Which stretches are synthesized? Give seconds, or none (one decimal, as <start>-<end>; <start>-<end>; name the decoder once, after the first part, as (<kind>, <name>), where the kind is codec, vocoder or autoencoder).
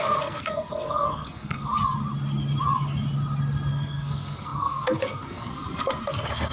0.0-1.7 (codec, SNAC); 3.7-6.5